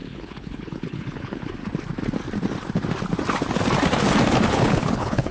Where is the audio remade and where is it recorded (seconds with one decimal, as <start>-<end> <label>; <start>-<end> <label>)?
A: 0.0-1.6 remade; 1.6-4.5 recorded; 4.5-5.3 remade